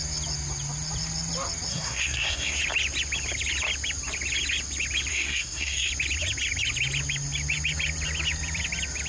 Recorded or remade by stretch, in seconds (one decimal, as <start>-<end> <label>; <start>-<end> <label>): 0.0-1.7 recorded; 1.7-2.6 remade; 2.6-5.1 recorded; 5.1-5.9 remade; 5.9-9.1 recorded